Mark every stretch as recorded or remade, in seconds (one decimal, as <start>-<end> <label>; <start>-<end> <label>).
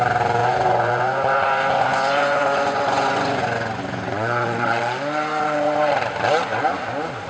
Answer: 0.0-0.4 recorded; 0.4-4.8 remade; 4.8-7.3 recorded